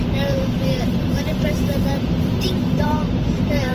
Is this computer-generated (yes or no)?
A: yes